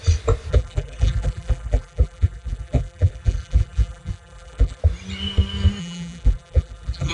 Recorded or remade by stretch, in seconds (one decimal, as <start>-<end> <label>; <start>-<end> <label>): 0.0-0.5 recorded; 0.5-4.8 remade; 4.8-5.8 recorded; 5.8-7.1 remade